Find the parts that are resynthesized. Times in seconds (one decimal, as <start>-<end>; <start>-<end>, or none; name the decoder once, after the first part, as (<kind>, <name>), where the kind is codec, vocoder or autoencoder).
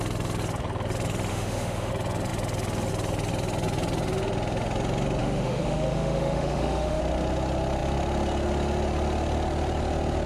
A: 1.3-1.9 (autoencoder, DAC-VAE); 5.2-7.0